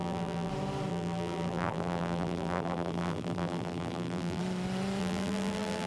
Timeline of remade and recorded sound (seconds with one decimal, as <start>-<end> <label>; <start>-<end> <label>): 0.0-0.5 remade; 0.5-0.9 recorded; 0.9-4.4 remade; 4.4-5.0 recorded; 5.0-5.9 remade